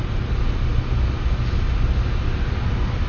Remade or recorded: recorded